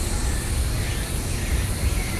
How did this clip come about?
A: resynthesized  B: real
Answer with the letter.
B